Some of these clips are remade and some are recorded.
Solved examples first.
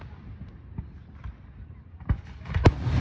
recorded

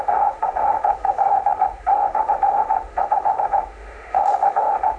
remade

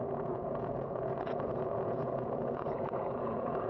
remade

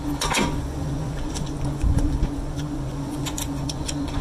remade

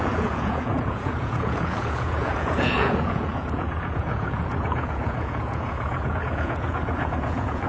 remade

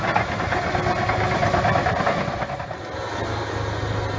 recorded